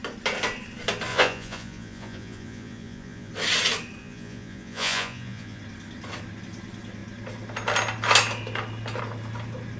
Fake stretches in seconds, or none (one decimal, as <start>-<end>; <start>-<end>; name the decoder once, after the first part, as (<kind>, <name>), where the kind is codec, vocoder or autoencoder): 1.1-3.3 (vocoder, Vocos); 4.0-5.6